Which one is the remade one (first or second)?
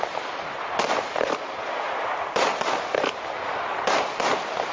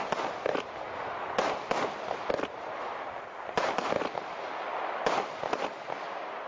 first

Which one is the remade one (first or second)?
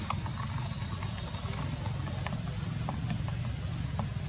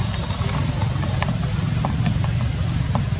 second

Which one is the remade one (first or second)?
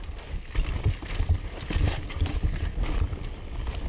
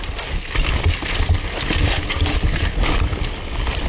first